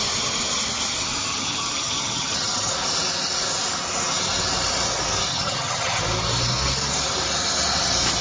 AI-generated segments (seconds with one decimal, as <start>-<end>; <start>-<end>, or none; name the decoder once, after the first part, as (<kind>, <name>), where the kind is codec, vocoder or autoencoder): 1.3-2.7 (vocoder, HiFi-GAN); 5.3-6.0